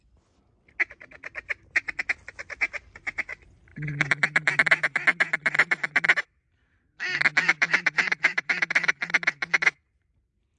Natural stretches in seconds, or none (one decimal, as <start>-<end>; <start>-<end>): 0.0-7.5; 8.9-10.6